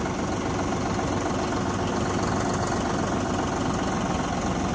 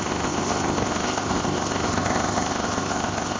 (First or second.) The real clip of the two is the first